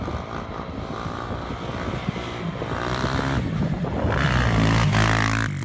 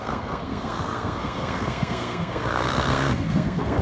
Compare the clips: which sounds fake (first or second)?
second